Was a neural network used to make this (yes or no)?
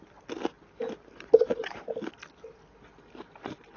no